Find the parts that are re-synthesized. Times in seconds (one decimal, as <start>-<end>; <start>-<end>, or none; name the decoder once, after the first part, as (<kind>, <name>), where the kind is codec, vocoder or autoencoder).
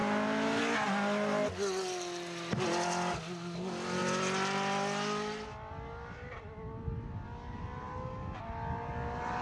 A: none